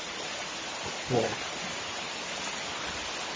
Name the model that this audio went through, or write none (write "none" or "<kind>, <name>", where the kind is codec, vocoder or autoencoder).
none